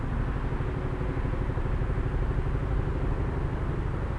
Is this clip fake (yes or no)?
no